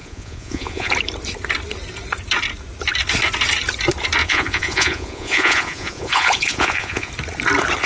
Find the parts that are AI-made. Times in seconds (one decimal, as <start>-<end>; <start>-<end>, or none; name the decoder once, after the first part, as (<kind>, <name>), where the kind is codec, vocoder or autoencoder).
0.0-0.9 (vocoder, Vocos); 4.2-7.1